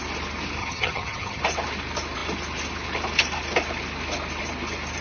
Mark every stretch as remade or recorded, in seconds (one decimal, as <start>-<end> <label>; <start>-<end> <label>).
0.0-0.6 recorded; 0.6-1.4 remade; 1.4-5.0 recorded